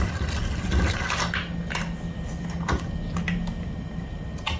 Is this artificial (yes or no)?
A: no